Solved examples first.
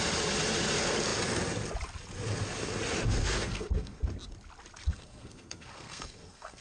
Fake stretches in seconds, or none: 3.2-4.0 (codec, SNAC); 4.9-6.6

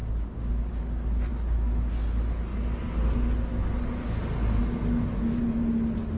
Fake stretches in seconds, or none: 1.3-1.9 (autoencoder, DAC-VAE)

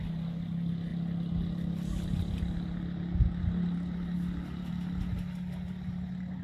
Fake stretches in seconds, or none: none

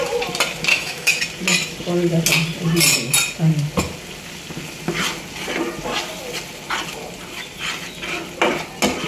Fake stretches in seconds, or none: 0.7-1.2 (autoencoder, DAC-VAE)

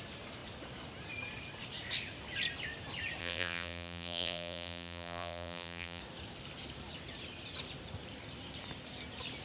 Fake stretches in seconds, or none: 3.2-6.0 (vocoder, BigVGAN v2)

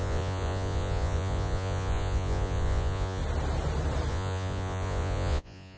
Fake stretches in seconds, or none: 0.0-3.2 (vocoder, Vocos); 4.1-5.8

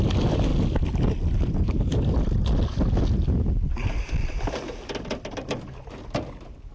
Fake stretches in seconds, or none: none